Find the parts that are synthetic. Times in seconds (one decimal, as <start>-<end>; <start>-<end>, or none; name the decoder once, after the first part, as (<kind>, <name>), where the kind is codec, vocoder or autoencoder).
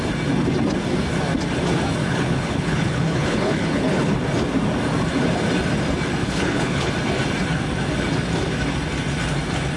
2.0-4.0 (codec, HILCodec); 6.2-6.9